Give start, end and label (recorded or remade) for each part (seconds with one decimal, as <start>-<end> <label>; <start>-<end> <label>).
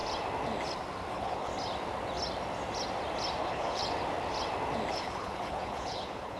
0.0-1.1 recorded; 1.1-1.5 remade; 1.5-3.4 recorded; 3.4-3.8 remade; 3.8-4.9 recorded; 4.9-6.4 remade